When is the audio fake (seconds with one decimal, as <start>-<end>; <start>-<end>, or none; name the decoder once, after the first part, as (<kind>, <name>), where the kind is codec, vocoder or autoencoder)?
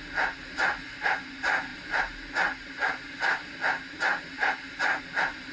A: none